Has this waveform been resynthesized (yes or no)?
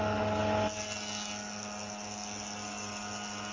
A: no